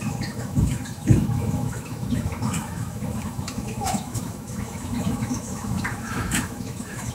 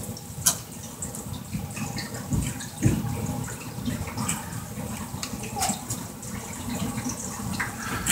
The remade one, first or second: first